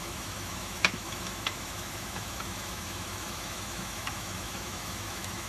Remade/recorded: remade